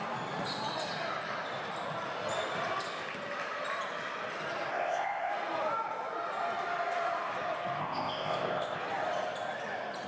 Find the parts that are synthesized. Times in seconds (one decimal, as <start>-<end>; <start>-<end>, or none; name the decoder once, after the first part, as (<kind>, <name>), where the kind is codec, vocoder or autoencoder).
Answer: 4.7-5.3 (codec, ZipCodec); 7.8-8.8